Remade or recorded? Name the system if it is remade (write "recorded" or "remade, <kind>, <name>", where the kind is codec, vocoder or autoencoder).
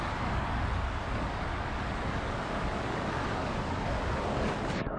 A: remade, codec, DAC